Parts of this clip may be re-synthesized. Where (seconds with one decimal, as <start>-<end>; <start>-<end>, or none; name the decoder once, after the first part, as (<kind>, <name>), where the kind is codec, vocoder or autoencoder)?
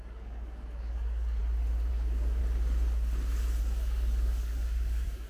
0.0-1.4 (codec, DAC); 1.9-2.4; 3.6-5.3